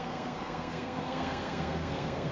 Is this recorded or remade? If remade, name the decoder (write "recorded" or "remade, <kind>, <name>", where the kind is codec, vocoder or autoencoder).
remade, codec, SNAC